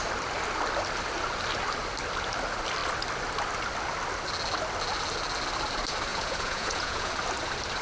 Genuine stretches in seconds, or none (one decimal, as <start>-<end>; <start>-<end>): 0.0-6.1; 7.1-7.8